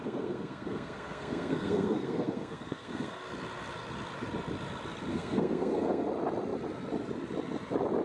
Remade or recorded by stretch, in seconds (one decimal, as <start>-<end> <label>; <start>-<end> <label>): 0.0-3.2 remade; 3.2-5.1 recorded; 5.1-6.1 remade; 6.1-8.0 recorded